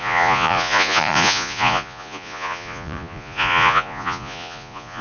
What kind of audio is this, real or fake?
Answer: fake